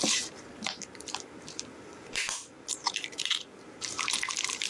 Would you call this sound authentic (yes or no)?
no